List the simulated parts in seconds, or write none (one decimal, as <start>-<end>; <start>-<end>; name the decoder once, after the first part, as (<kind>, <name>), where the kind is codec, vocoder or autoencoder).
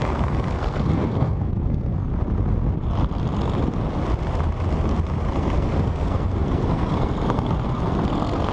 0.0-2.1 (codec, SNAC); 5.3-8.5